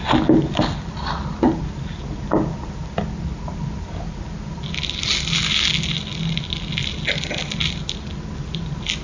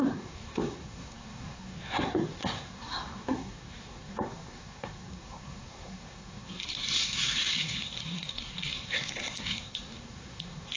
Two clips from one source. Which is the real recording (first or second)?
first